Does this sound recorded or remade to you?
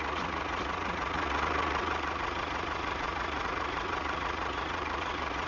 remade